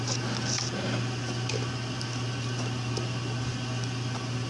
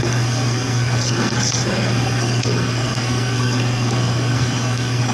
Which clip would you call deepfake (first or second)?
second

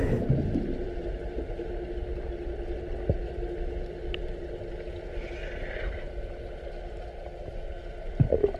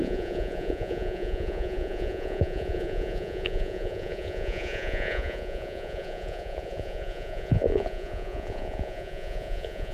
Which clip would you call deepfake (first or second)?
second